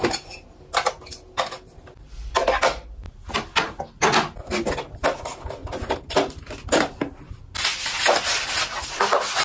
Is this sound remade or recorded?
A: recorded